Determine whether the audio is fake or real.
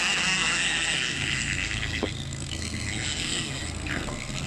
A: fake